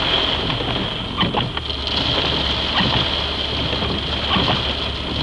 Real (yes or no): yes